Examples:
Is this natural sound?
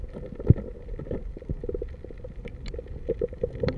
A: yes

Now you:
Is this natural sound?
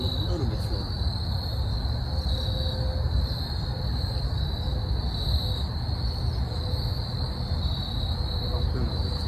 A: yes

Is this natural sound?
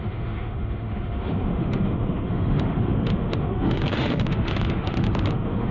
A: no